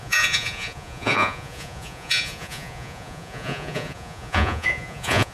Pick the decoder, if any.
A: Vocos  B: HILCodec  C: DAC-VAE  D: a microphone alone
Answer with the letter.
A